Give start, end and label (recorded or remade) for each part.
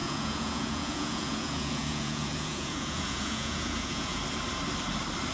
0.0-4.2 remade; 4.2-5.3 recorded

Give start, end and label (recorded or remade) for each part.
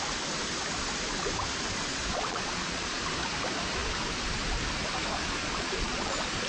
0.0-1.9 recorded; 1.9-3.0 remade; 3.0-5.4 recorded; 5.4-6.1 remade; 6.1-6.5 recorded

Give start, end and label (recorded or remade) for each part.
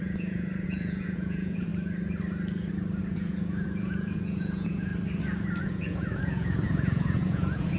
0.0-1.7 remade; 1.7-3.0 recorded; 3.0-4.9 remade; 4.9-5.6 recorded; 5.6-7.8 remade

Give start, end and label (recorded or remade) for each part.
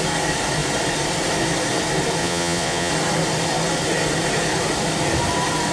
0.0-2.2 recorded; 2.2-2.9 remade; 2.9-5.7 recorded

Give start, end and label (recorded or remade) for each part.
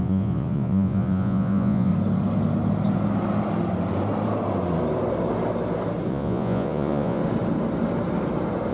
0.0-1.9 remade; 1.9-6.1 recorded; 6.1-7.2 remade; 7.2-8.7 recorded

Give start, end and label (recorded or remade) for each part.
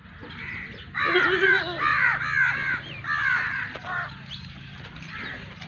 0.0-5.7 recorded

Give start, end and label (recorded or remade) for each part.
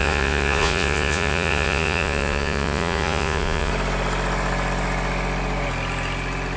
0.0-3.7 remade; 3.7-6.6 recorded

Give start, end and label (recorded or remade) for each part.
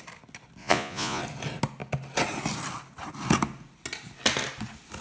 0.0-0.6 recorded; 0.6-1.2 remade; 1.2-5.0 recorded